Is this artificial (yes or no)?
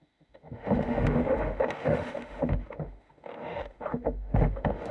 yes